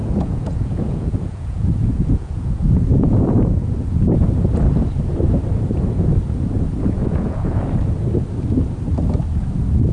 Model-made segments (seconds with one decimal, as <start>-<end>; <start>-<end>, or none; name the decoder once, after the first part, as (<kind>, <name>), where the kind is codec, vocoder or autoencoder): 0.0-4.2 (vocoder, Vocos); 7.0-7.6